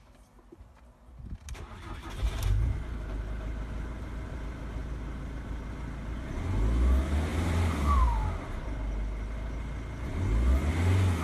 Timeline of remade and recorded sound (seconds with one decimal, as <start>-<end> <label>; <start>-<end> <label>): 0.0-4.8 recorded; 4.8-5.7 remade; 5.7-7.3 recorded; 7.3-8.0 remade; 8.0-11.2 recorded